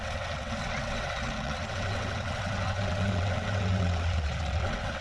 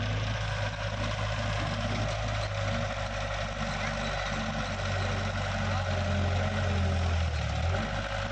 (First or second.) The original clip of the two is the second